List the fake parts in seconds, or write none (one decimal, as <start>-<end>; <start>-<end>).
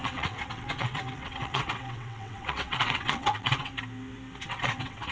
0.0-3.7; 4.4-5.1